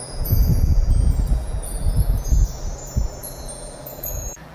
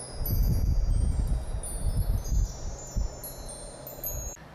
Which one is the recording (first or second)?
second